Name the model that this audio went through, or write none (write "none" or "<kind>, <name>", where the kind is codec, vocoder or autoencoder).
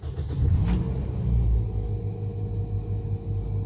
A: none